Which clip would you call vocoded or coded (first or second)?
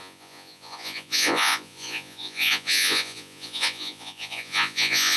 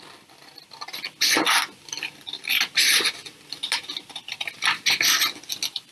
first